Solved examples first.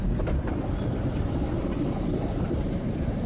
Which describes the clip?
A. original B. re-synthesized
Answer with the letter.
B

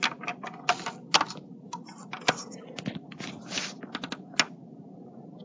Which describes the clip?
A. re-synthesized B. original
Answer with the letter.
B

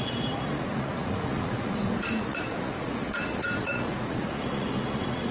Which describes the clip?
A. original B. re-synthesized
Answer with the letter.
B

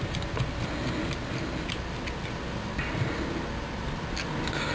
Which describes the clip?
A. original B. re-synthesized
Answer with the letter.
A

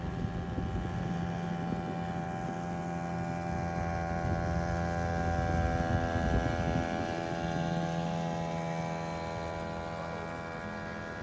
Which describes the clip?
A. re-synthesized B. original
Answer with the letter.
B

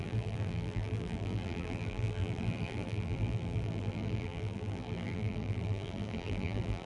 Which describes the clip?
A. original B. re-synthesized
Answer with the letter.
B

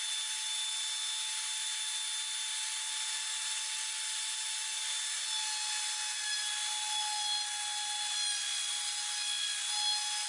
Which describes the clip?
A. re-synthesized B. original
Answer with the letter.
B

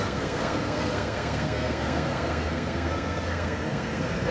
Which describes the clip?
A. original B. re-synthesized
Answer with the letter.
B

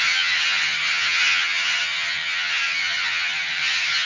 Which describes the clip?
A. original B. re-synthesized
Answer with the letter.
B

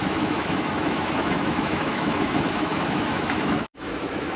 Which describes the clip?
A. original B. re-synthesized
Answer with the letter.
B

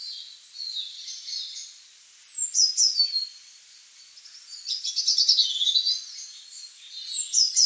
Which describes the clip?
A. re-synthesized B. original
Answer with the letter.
B